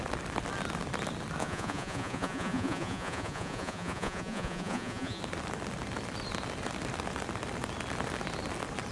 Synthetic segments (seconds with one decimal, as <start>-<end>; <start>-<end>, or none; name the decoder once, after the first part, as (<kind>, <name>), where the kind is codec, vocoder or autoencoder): 1.4-5.2 (vocoder, Vocos)